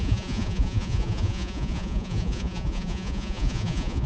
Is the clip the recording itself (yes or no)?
no